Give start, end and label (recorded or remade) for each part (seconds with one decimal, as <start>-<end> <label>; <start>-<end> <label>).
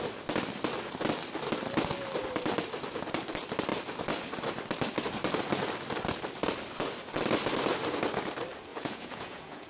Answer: 0.0-8.7 recorded; 8.7-9.7 remade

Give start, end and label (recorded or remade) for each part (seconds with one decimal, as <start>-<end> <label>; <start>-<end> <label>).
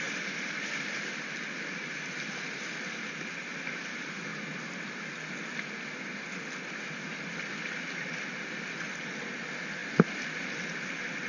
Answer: 0.0-11.3 recorded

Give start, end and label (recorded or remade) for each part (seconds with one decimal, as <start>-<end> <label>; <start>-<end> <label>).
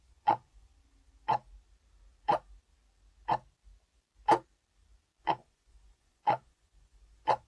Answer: 0.0-0.7 remade; 0.7-5.2 recorded; 5.2-7.5 remade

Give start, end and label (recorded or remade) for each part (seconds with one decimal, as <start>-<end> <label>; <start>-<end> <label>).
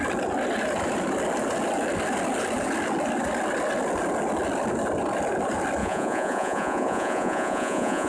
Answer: 0.0-5.8 recorded; 5.8-8.1 remade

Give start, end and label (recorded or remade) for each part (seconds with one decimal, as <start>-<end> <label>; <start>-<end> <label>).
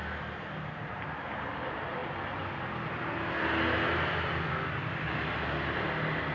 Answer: 0.0-6.3 recorded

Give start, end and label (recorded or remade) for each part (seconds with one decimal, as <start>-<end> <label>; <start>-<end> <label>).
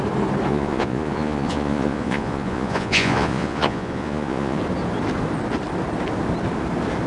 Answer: 0.0-0.5 recorded; 0.5-4.6 remade; 4.6-7.1 recorded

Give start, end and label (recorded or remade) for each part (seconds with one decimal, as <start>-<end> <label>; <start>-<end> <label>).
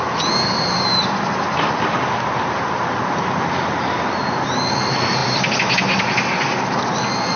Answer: 0.0-7.4 recorded